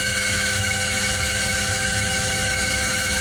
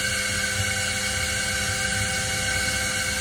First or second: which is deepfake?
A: first